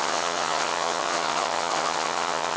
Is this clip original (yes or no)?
no